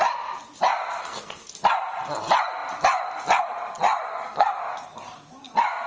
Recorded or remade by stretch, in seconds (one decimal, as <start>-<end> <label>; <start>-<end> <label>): 0.0-1.0 recorded; 1.0-1.5 remade; 1.5-4.1 recorded; 4.1-4.6 remade; 4.6-5.9 recorded